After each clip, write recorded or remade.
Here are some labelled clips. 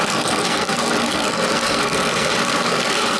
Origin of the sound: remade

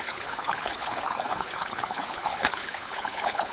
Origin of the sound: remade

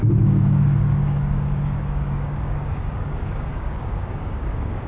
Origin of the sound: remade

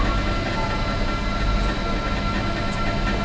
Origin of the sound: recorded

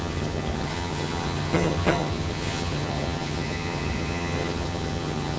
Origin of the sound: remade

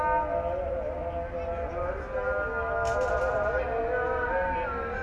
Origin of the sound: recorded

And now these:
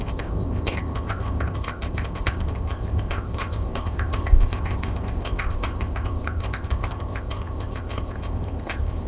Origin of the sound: remade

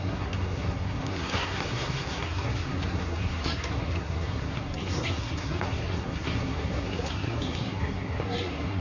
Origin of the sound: remade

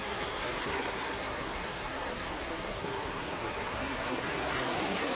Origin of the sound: remade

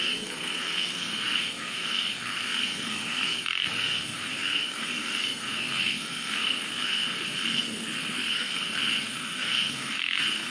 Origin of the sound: remade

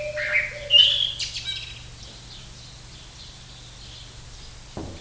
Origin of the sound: recorded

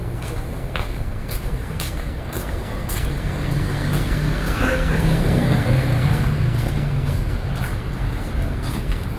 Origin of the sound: remade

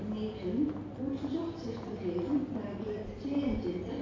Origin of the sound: recorded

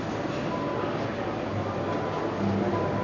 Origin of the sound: recorded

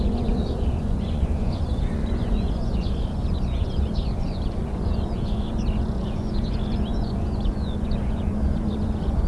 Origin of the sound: remade